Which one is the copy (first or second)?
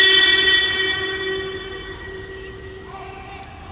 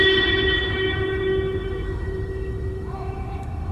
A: second